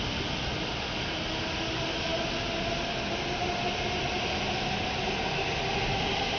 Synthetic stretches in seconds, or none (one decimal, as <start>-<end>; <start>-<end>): none